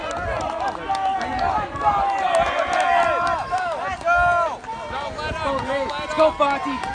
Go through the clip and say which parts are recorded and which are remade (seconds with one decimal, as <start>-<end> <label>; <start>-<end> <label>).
0.0-6.9 recorded